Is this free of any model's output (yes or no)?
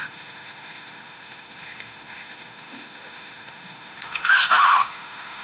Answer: no